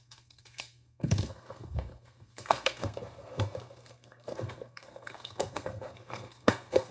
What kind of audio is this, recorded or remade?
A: remade